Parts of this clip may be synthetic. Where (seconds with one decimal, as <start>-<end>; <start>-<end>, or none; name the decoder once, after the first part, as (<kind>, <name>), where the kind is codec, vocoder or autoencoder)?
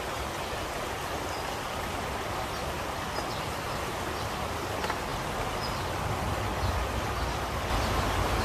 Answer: none